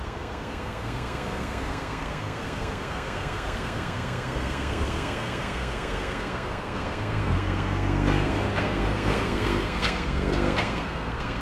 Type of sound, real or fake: fake